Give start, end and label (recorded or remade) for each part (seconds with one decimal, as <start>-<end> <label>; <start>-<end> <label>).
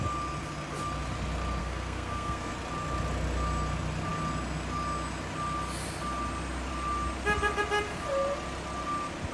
0.0-1.6 recorded; 1.6-2.5 remade; 2.5-9.3 recorded